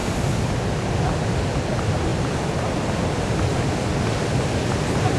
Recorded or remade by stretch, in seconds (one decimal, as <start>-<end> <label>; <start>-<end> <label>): 0.0-5.2 recorded